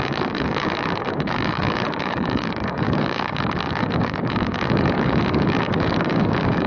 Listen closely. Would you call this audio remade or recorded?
remade